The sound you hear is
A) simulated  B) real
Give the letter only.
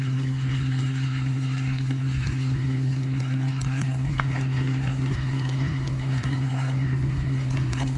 A